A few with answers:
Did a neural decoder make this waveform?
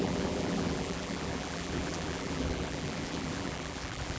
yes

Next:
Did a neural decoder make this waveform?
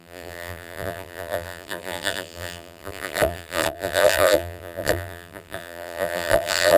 yes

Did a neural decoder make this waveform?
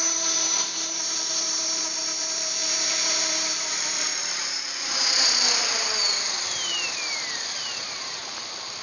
yes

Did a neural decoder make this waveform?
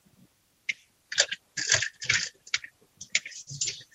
yes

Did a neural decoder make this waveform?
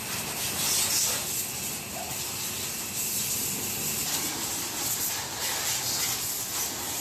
no